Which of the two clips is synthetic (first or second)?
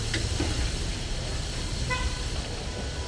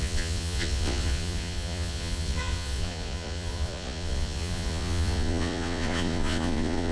second